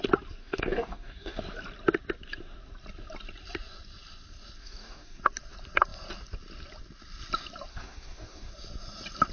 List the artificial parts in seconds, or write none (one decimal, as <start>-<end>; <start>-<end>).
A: 0.4-1.4; 4.6-5.2; 7.7-8.5

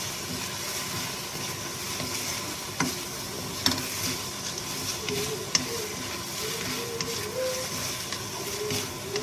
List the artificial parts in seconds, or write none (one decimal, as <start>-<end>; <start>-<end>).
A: none

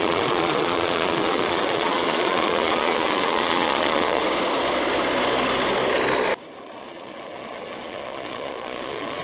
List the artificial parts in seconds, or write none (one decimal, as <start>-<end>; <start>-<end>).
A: 0.0-4.2; 6.6-9.2

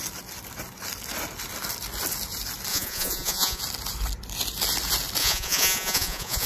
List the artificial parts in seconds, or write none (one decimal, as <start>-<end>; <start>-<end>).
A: 2.7-3.6; 5.2-6.5

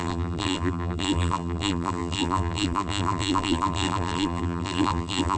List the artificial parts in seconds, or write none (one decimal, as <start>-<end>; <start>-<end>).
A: 0.0-5.4

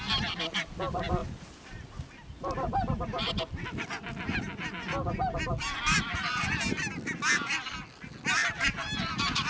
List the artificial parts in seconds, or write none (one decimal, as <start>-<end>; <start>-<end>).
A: 1.2-3.4

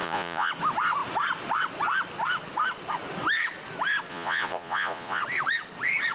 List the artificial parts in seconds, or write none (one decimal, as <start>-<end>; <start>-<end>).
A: 0.0-0.5; 4.1-5.2